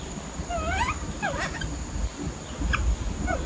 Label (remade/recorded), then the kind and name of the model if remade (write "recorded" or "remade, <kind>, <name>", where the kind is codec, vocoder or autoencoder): recorded